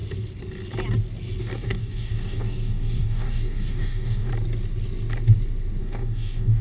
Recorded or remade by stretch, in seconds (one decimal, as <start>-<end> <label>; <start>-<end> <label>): 0.0-1.4 recorded; 1.4-4.3 remade; 4.3-5.8 recorded; 5.8-6.6 remade